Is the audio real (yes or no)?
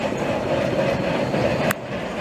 yes